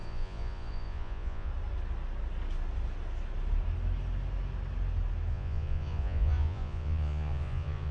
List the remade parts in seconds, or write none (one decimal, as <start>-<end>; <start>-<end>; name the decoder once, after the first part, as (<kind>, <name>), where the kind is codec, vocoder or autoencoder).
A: 0.0-1.5 (vocoder, Vocos); 5.3-7.9